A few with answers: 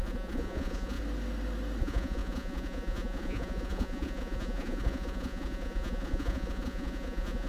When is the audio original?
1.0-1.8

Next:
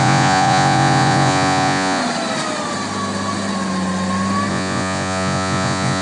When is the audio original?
2.0-4.5